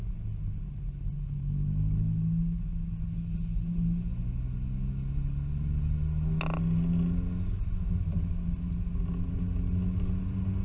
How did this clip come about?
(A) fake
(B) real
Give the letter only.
B